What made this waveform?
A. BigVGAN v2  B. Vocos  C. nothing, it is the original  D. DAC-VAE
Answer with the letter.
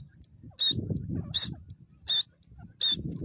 C